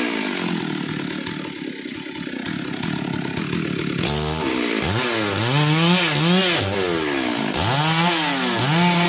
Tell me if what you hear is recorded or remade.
recorded